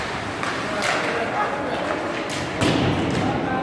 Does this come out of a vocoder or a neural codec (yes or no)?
no